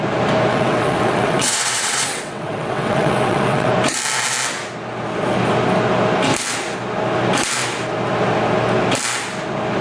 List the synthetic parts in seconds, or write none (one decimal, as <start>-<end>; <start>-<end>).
0.5-3.7